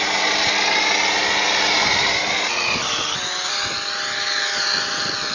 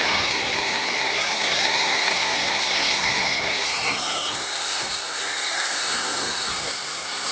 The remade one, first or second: second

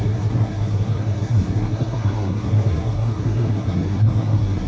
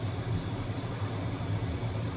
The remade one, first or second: first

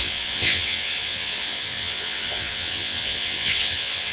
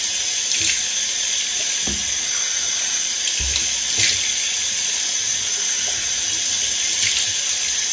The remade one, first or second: first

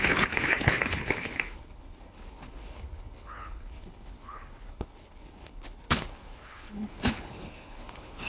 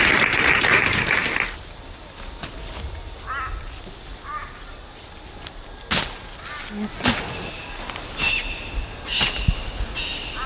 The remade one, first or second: first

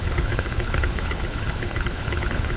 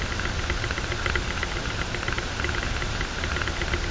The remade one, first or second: first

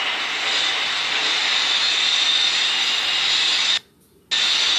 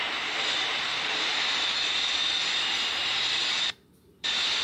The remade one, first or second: second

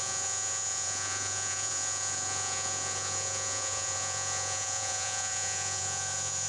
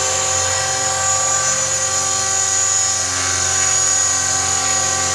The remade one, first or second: first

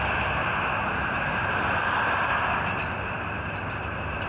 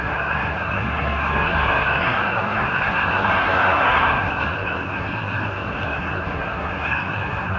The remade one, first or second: second